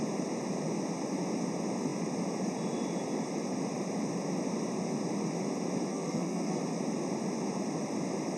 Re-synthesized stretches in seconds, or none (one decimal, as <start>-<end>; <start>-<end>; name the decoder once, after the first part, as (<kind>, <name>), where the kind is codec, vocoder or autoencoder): 5.9-6.6 (codec, SNAC)